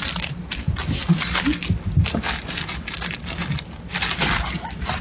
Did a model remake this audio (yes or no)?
no